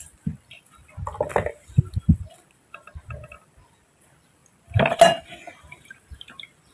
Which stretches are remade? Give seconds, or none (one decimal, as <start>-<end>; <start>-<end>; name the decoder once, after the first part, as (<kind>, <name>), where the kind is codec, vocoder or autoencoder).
none